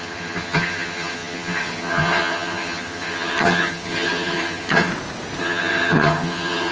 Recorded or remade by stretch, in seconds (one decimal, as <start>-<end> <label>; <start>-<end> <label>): 0.0-4.9 remade; 4.9-5.4 recorded; 5.4-6.7 remade